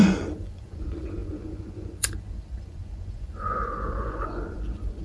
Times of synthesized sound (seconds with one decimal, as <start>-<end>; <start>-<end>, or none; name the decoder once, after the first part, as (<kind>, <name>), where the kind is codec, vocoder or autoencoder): 0.0-5.0 (vocoder, Vocos)